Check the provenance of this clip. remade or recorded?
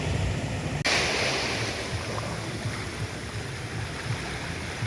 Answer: recorded